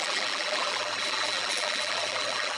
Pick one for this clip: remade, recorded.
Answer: remade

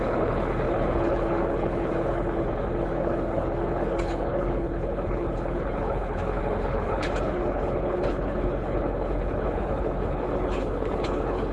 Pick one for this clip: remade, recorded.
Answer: remade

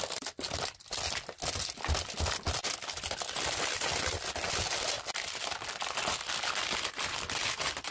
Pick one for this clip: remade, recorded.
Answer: recorded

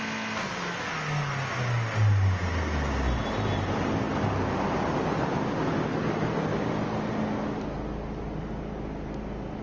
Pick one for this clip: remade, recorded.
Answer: recorded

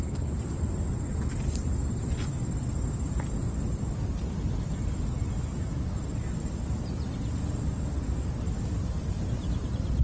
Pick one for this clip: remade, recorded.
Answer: recorded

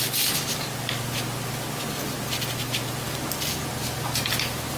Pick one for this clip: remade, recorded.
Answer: recorded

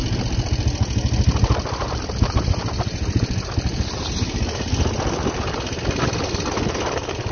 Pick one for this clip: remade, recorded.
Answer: recorded